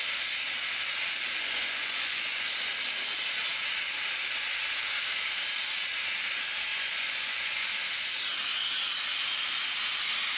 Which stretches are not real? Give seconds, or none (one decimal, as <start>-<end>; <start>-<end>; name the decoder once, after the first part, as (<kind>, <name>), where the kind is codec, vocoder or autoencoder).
1.4-2.5 (vocoder, Vocos); 6.7-7.7